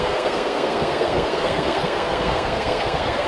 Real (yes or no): no